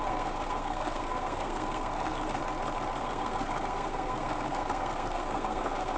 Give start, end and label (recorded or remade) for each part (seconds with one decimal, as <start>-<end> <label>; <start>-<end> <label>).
0.0-2.4 remade; 2.4-3.0 recorded; 3.0-6.0 remade

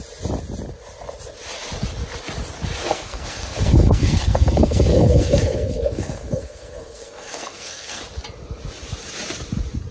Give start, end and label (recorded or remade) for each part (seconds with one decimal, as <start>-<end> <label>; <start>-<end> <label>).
0.0-2.8 recorded; 2.8-8.0 remade; 8.0-9.9 recorded

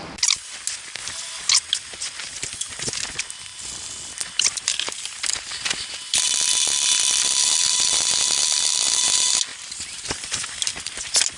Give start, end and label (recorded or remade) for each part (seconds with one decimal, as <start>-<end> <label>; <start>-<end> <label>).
0.0-11.4 recorded

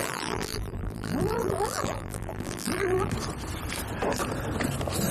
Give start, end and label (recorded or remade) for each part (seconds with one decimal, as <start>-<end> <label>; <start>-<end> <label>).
0.0-3.1 remade; 3.1-5.1 recorded

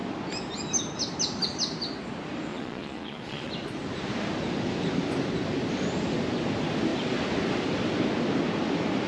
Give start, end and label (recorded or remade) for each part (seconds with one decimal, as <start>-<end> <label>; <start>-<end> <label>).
0.0-2.5 recorded; 2.5-3.5 remade; 3.5-9.1 recorded

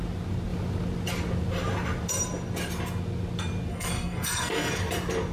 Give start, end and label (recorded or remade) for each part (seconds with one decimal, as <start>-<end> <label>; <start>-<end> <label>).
0.0-3.7 recorded; 3.7-4.7 remade; 4.7-5.3 recorded

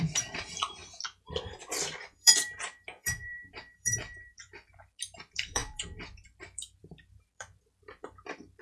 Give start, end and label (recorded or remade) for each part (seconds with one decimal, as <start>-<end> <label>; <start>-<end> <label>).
0.0-0.8 remade; 0.8-1.4 recorded; 1.4-8.6 remade